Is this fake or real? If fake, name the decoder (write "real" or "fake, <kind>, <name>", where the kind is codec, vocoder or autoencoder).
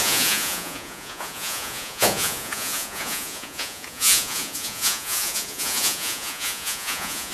fake, vocoder, Vocos